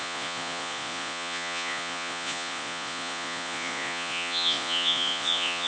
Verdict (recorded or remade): remade